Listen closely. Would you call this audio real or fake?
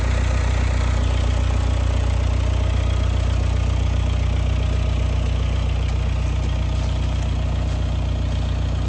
real